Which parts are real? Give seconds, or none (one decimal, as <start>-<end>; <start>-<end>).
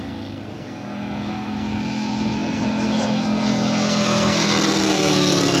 none